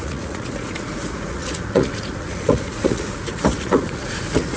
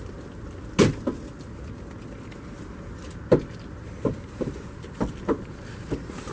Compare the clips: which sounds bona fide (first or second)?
second